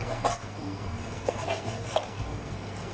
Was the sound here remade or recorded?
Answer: remade